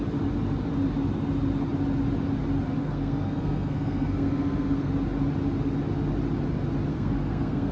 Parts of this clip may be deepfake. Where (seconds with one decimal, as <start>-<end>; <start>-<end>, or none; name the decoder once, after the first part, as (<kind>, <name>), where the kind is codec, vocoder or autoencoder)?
2.8-4.9 (codec, SNAC); 6.9-7.7